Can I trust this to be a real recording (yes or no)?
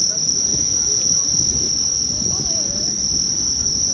yes